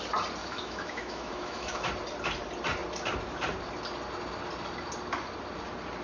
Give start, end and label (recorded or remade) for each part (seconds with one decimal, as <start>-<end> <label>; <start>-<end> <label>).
0.0-0.4 recorded; 0.4-1.9 remade; 1.9-6.0 recorded